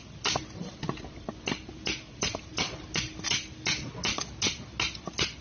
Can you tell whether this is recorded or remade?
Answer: recorded